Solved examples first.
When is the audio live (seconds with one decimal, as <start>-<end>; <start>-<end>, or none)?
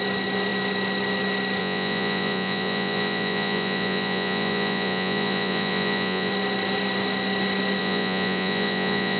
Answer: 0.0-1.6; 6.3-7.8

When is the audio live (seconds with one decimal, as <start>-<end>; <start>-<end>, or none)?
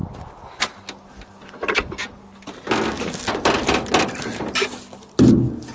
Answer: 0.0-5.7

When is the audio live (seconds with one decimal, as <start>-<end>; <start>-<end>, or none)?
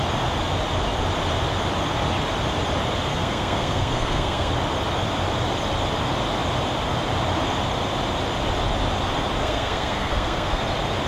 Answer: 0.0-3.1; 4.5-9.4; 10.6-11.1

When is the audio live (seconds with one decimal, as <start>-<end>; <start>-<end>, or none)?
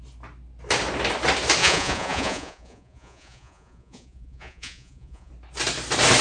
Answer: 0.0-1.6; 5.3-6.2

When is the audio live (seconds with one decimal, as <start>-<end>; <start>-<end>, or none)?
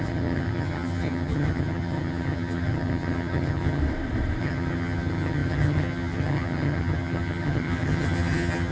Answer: 3.8-4.4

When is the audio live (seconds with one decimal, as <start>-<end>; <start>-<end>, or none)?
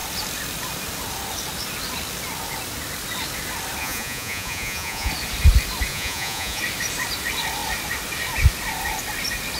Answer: 0.0-3.8; 5.1-5.9; 6.6-9.6